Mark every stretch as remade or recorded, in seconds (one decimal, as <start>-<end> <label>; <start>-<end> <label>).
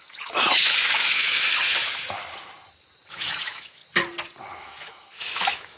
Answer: 0.0-1.4 remade; 1.4-3.1 recorded; 3.1-3.8 remade; 3.8-4.6 recorded; 4.6-5.8 remade